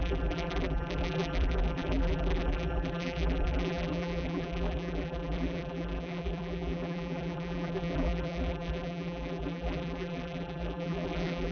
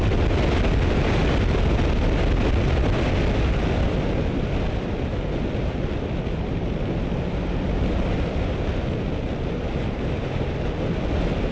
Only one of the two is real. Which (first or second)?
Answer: second